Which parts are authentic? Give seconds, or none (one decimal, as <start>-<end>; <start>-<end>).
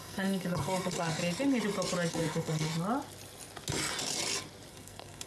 1.2-2.1; 2.7-4.7